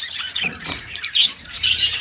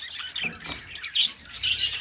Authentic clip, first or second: second